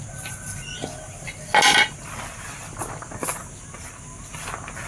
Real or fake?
real